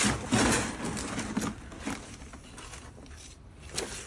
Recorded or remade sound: recorded